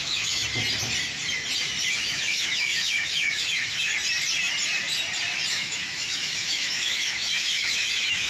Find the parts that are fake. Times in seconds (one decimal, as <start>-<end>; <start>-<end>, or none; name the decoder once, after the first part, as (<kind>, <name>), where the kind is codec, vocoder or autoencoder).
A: 0.0-0.4 (autoencoder, DAC-VAE); 1.9-3.9; 5.5-8.3